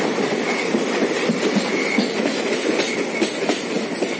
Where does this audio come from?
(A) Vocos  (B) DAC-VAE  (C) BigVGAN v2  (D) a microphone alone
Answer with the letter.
D